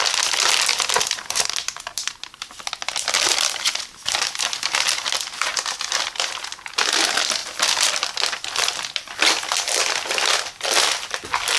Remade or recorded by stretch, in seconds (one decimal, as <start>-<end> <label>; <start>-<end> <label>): 0.0-0.7 recorded; 0.7-2.7 remade; 2.7-7.4 recorded; 7.4-11.0 remade; 11.0-11.6 recorded